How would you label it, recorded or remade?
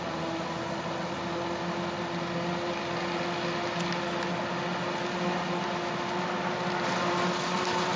recorded